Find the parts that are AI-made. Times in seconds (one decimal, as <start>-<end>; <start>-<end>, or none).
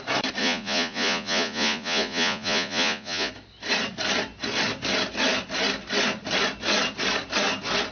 0.4-3.3